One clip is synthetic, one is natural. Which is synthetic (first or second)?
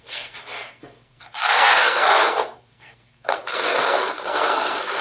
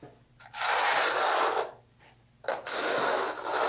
first